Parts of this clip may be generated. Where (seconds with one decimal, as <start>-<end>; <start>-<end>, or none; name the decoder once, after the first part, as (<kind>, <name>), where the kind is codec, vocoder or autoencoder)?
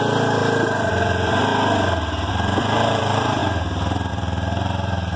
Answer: 0.0-1.5 (vocoder, BigVGAN v2); 2.3-3.4; 4.1-5.2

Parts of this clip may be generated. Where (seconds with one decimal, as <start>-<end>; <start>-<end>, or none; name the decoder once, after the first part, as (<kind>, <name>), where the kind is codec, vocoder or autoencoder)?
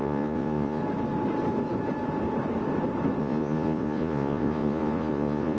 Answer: 0.0-0.8 (vocoder, Vocos); 3.2-5.6